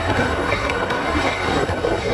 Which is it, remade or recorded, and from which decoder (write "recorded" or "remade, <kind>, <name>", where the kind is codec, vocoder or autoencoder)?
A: remade, codec, SNAC